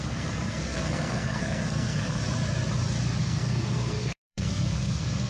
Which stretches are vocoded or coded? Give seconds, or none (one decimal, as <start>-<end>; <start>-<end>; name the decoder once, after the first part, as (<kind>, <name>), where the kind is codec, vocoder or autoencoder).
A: 0.0-2.2 (codec, SNAC); 3.2-5.3